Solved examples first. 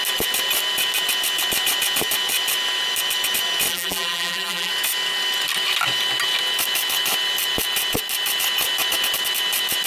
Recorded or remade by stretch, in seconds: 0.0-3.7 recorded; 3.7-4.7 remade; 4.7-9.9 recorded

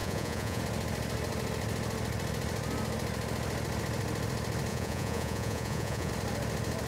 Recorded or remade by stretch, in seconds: 0.0-0.6 remade; 0.6-4.7 recorded; 4.7-6.1 remade; 6.1-6.9 recorded

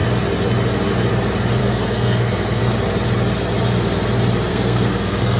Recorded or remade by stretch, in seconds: 0.0-1.6 recorded; 1.6-2.6 remade; 2.6-4.5 recorded; 4.5-5.4 remade

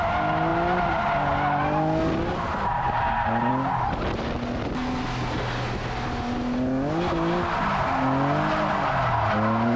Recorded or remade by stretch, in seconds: 0.0-9.8 recorded